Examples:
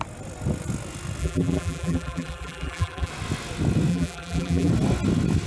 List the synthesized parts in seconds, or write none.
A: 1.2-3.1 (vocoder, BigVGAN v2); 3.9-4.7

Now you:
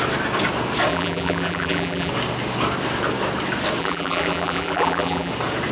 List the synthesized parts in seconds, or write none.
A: 0.9-2.1 (vocoder, BigVGAN v2); 3.8-5.3

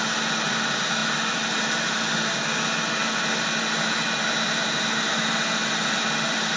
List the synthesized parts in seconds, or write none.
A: none

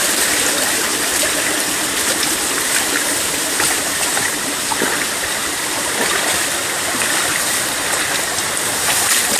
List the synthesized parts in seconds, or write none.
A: none